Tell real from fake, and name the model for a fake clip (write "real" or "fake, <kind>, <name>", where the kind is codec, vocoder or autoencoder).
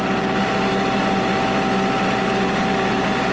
real